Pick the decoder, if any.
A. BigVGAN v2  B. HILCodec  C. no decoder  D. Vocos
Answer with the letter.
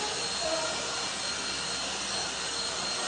C